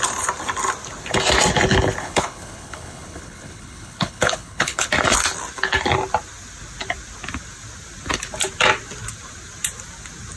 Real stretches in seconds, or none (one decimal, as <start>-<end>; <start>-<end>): 0.0-2.0; 4.9-10.4